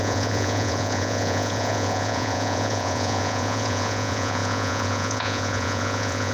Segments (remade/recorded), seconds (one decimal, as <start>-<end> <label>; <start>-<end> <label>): 0.0-6.3 remade